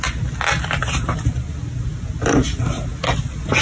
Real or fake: real